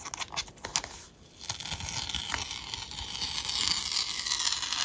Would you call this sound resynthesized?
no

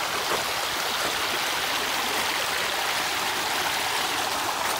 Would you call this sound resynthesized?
no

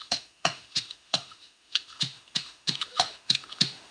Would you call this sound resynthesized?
yes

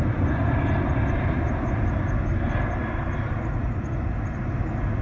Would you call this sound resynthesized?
no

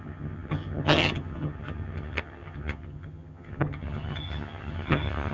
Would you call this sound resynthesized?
yes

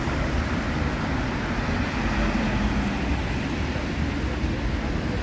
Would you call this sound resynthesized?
no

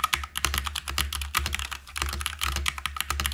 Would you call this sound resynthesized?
no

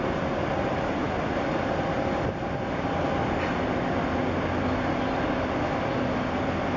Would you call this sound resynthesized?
no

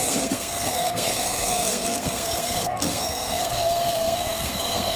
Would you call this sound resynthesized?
yes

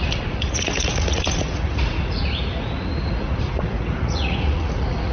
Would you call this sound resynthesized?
yes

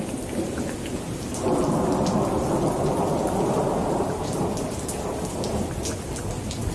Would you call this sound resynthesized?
no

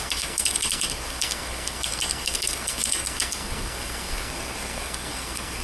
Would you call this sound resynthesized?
yes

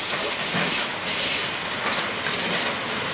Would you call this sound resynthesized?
no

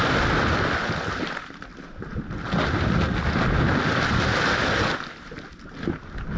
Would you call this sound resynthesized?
no